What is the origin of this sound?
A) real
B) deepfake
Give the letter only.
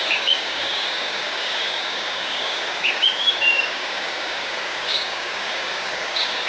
B